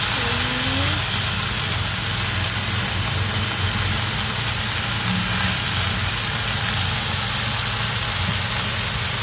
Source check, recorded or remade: recorded